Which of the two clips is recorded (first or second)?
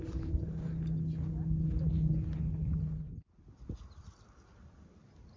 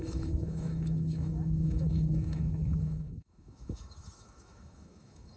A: first